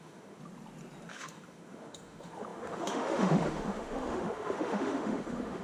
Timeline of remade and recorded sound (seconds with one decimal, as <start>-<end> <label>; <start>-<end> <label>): 0.0-0.4 remade; 0.4-1.1 recorded; 1.1-5.6 remade